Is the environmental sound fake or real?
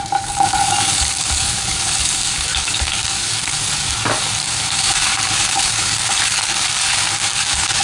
fake